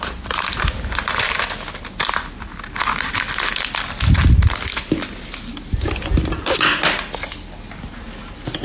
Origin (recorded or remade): recorded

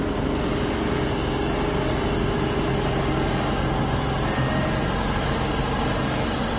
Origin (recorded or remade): recorded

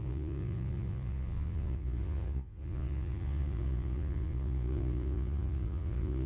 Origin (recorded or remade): remade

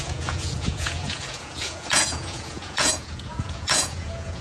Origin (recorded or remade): remade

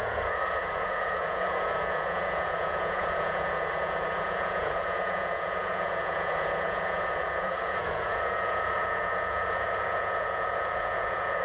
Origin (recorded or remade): remade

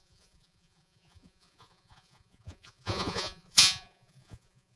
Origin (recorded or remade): remade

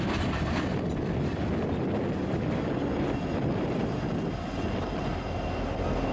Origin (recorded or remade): recorded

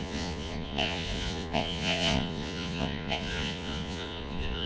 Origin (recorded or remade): remade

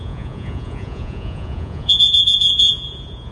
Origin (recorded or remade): remade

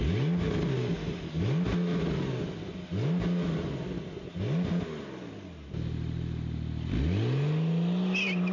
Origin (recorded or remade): recorded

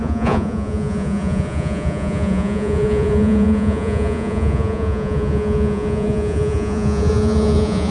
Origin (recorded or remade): remade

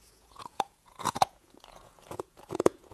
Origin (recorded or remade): remade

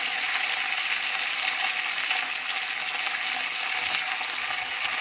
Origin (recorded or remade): recorded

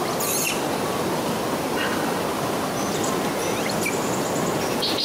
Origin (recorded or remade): recorded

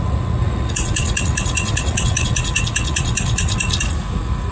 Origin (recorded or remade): remade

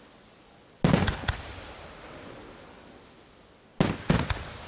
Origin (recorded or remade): recorded